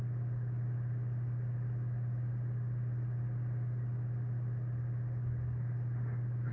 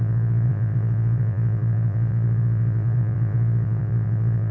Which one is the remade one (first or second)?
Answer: second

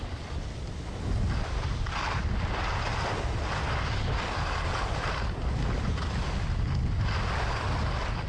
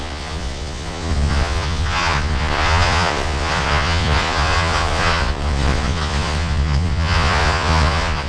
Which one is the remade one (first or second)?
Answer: second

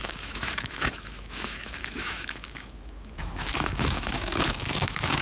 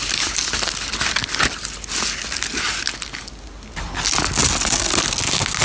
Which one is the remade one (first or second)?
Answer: first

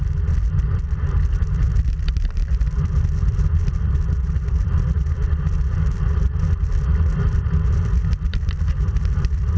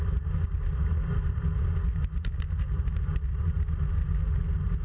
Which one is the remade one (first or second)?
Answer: first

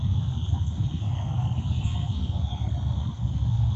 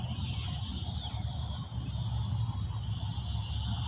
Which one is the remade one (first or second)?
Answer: first